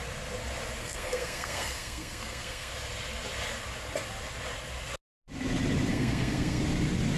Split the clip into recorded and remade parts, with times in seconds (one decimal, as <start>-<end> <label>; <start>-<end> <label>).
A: 0.0-0.8 recorded; 0.8-2.7 remade; 2.7-5.9 recorded; 5.9-6.6 remade; 6.6-7.2 recorded